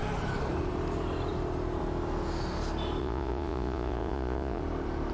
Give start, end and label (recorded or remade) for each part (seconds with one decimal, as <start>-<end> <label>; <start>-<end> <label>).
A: 0.0-3.0 recorded; 3.0-4.6 remade; 4.6-5.1 recorded